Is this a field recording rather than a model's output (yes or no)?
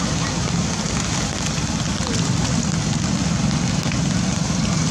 yes